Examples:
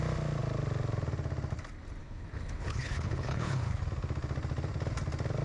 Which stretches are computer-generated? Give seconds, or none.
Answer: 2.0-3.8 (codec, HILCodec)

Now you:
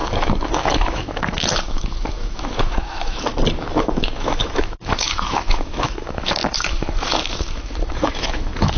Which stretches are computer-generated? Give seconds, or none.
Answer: 0.0-3.3 (autoencoder, DAC-VAE); 3.8-8.8

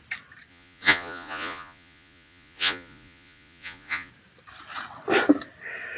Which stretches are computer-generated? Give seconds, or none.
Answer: 0.5-4.1 (vocoder, Vocos)

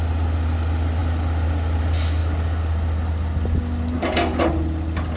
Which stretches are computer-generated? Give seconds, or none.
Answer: none

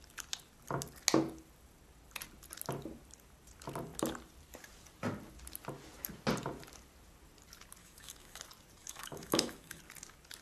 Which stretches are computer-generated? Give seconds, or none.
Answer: 7.8-8.4 (autoencoder, DAC-VAE); 8.8-9.8

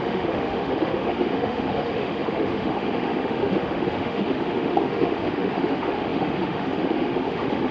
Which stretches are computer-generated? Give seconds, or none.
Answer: 0.0-7.7 (autoencoder, DAC-VAE)

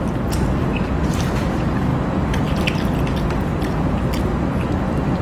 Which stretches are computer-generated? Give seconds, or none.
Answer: none

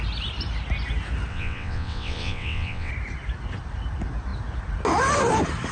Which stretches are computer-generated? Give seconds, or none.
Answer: 1.3-2.9 (vocoder, WaveNeXt)